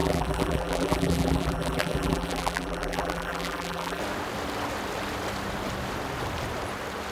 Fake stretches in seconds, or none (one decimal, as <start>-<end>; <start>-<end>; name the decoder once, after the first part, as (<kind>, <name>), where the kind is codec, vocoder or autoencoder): 0.0-4.0 (vocoder, BigVGAN v2)

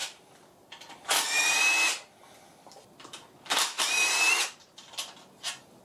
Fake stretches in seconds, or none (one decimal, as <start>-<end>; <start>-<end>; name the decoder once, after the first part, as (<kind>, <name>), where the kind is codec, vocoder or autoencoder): 0.0-1.4 (vocoder, BigVGAN v2)

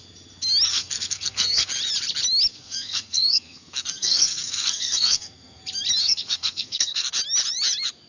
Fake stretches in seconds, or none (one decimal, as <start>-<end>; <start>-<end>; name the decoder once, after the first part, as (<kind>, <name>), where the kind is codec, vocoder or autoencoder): 0.7-1.7 (codec, SNAC); 2.5-5.6; 6.0-7.1

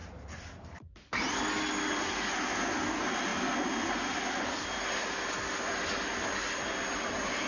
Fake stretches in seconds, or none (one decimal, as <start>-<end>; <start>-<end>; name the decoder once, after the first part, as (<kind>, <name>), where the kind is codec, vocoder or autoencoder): 0.0-1.3 (vocoder, BigVGAN v2)

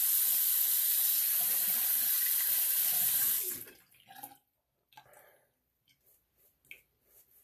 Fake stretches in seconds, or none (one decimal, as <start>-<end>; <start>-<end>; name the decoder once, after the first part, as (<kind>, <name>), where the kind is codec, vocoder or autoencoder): none